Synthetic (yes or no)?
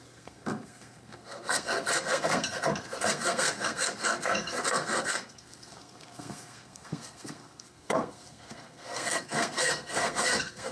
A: yes